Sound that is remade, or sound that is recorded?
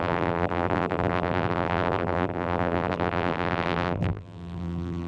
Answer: remade